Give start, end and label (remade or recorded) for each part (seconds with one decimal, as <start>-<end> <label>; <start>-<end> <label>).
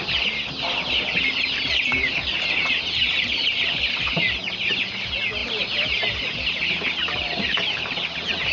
0.0-1.9 recorded; 1.9-3.9 remade; 3.9-7.0 recorded; 7.0-8.1 remade; 8.1-8.5 recorded